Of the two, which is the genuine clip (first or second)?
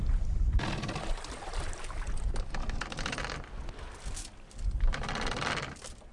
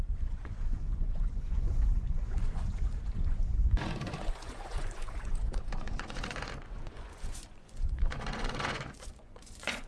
first